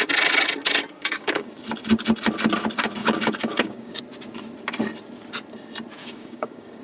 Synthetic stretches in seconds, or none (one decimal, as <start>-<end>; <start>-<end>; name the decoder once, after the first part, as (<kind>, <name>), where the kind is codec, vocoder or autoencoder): 1.0-1.5 (codec, DAC); 3.0-4.0; 6.0-6.8